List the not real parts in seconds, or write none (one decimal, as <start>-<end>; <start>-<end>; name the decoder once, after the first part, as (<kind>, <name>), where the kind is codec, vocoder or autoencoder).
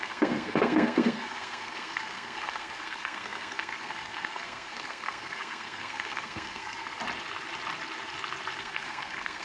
0.0-7.0 (codec, SNAC); 8.6-9.4